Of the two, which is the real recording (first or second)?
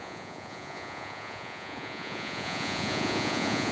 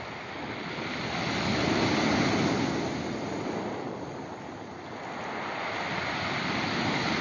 second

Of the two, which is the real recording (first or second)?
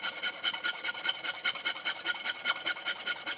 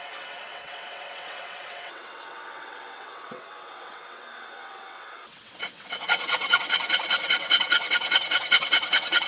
first